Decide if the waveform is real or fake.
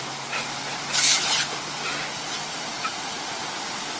real